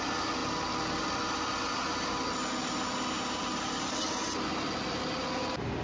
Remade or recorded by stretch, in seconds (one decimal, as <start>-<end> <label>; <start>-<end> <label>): 0.0-5.8 recorded